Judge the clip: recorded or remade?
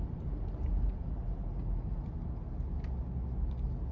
recorded